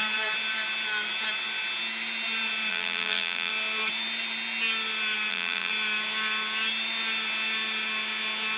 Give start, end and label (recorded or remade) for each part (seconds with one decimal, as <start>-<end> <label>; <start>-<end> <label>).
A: 0.0-2.7 recorded; 2.7-3.5 remade; 3.5-5.3 recorded; 5.3-5.7 remade; 5.7-8.6 recorded